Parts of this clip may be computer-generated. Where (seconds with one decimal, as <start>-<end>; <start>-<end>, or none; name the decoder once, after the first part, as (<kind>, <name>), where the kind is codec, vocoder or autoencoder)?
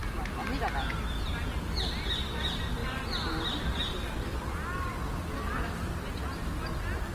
none